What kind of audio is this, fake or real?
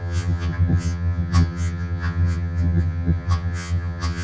fake